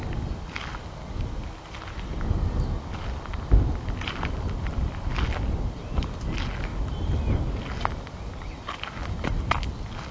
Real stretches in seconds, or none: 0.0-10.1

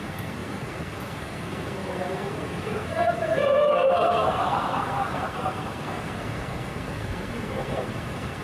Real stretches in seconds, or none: none

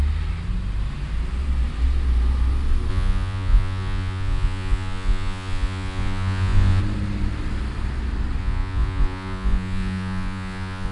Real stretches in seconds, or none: 0.0-2.9; 6.8-8.4

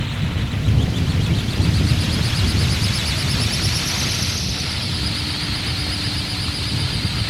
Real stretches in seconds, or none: none

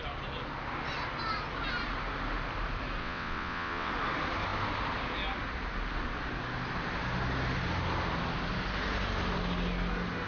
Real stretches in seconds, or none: 0.0-3.0; 3.9-10.3